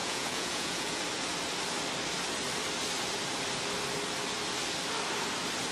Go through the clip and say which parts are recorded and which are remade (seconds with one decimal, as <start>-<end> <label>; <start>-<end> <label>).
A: 0.0-1.0 remade; 1.0-5.7 recorded